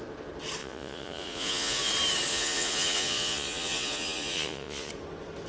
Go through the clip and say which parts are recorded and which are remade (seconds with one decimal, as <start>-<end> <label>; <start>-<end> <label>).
0.0-0.6 recorded; 0.6-1.9 remade; 1.9-2.3 recorded; 2.3-4.9 remade; 4.9-5.5 recorded